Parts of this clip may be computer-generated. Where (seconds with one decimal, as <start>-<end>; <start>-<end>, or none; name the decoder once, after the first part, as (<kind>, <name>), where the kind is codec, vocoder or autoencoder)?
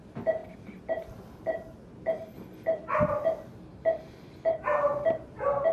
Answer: 0.4-1.4 (vocoder, BigVGAN v2)